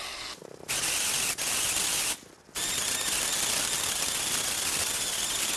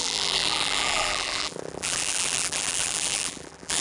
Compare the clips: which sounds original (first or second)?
first